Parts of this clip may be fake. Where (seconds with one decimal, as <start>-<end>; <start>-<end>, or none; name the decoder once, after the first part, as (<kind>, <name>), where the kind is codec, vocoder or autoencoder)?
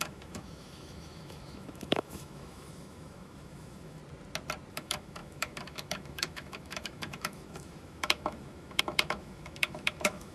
0.0-4.0 (autoencoder, DAC-VAE); 4.7-10.3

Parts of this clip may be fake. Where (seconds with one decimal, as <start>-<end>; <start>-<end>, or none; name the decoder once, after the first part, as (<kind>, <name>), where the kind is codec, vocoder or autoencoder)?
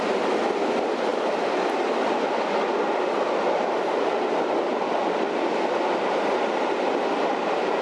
none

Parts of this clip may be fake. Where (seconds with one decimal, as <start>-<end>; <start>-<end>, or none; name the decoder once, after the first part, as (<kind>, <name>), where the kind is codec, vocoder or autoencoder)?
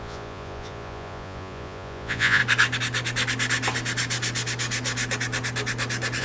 0.0-2.4 (vocoder, Vocos)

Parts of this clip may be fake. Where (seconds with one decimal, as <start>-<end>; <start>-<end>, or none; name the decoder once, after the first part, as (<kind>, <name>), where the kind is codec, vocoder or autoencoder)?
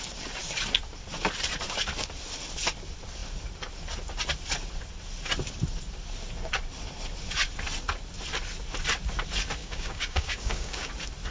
9.6-10.9 (codec, DAC)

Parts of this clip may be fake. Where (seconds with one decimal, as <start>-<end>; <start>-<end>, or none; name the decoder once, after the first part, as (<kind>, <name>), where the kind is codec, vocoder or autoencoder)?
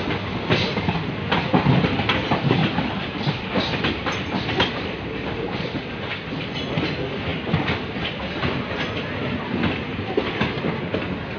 2.6-6.3 (vocoder, BigVGAN v2); 9.9-11.0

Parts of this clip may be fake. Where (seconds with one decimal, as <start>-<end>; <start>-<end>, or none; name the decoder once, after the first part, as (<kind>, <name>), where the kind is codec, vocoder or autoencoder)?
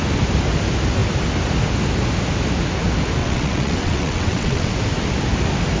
3.2-4.7 (vocoder, WaveNeXt)